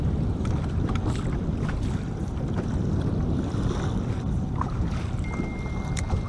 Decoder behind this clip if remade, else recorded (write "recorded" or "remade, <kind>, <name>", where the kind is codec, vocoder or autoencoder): recorded